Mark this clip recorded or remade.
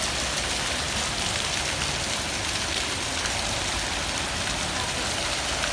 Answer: recorded